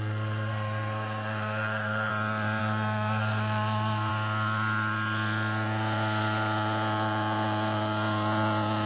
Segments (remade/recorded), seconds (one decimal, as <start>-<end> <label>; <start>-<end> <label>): 0.0-2.1 remade; 2.1-2.6 recorded; 2.6-4.1 remade; 4.1-8.9 recorded

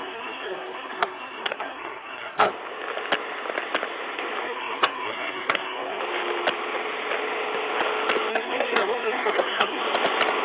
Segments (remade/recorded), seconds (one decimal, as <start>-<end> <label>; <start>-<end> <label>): 0.0-2.5 remade; 2.5-4.4 recorded; 4.4-6.0 remade; 6.0-8.3 recorded; 8.3-9.8 remade; 9.8-10.4 recorded

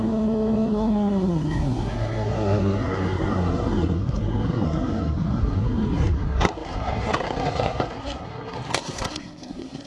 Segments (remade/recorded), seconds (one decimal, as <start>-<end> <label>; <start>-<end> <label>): 0.0-9.9 remade

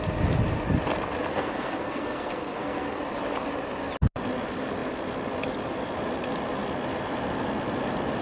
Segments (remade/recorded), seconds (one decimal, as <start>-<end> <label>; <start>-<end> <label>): 0.0-1.3 recorded; 1.3-3.0 remade; 3.0-8.2 recorded

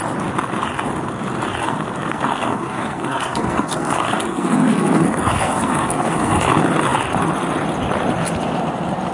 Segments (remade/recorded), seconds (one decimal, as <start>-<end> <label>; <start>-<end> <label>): 0.0-1.6 recorded; 1.6-6.5 remade; 6.5-9.1 recorded

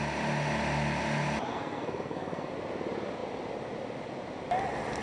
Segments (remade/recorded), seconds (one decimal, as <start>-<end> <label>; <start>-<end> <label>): 0.0-1.5 recorded; 1.5-2.5 remade; 2.5-5.0 recorded

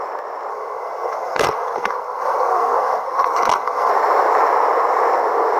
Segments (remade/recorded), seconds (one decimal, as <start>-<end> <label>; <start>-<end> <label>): 0.0-0.5 recorded; 0.5-3.9 remade; 3.9-5.6 recorded

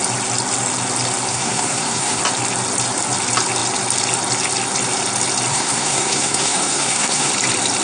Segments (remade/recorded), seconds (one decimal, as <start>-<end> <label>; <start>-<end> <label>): 0.0-1.3 recorded; 1.3-2.2 remade; 2.2-5.5 recorded; 5.5-7.3 remade; 7.3-7.8 recorded